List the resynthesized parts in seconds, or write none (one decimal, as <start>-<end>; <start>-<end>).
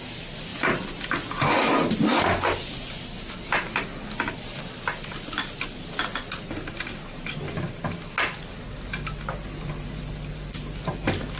0.5-2.2